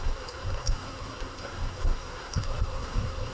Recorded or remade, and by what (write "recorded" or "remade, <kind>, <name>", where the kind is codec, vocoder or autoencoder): remade, codec, SNAC